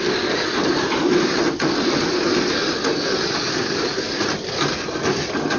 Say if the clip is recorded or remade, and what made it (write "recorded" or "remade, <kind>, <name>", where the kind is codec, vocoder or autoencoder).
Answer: recorded